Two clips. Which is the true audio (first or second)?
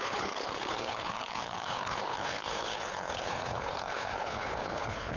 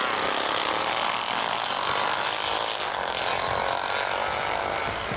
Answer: second